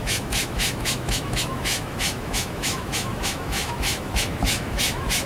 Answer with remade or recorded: remade